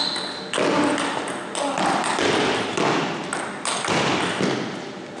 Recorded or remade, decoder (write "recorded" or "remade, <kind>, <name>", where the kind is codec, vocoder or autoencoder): recorded